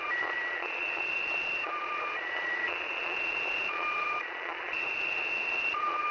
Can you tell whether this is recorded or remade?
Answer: remade